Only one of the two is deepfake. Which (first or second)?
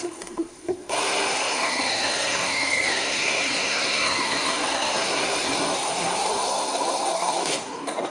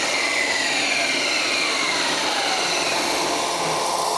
first